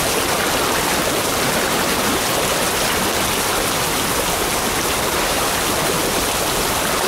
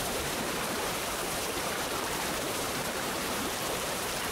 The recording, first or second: first